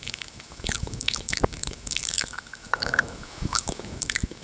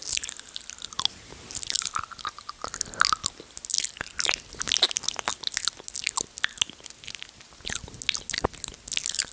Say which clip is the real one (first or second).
second